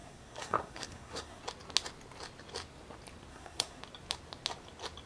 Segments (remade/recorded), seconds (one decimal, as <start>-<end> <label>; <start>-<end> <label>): 0.0-1.4 remade; 1.4-3.3 recorded; 3.3-3.8 remade; 3.8-5.1 recorded